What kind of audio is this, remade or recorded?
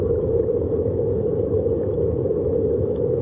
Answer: remade